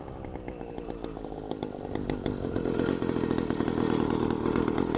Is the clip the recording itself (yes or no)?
yes